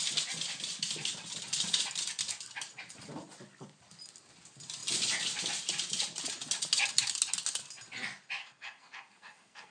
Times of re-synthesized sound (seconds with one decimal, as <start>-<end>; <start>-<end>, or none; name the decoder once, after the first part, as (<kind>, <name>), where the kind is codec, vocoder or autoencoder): 8.4-9.7 (codec, SNAC)